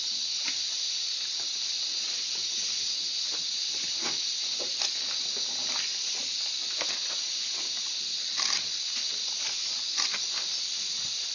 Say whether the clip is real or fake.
real